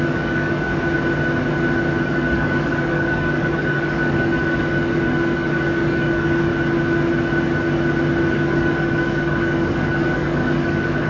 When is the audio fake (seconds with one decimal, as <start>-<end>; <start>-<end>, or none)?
0.0-0.7; 2.0-6.5; 8.3-11.1